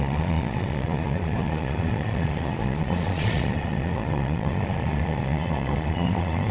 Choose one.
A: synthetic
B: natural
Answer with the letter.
A